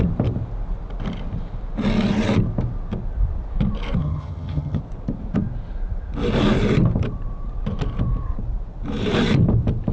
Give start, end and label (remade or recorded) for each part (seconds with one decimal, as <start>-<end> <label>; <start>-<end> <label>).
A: 0.0-4.0 recorded; 4.0-4.8 remade; 4.8-9.9 recorded